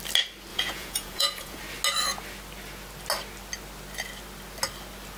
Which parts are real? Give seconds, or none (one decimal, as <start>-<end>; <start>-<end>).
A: 0.0-0.5; 1.6-5.2